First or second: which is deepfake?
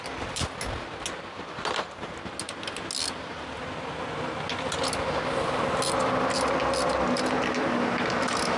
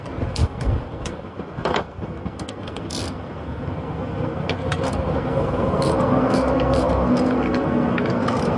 second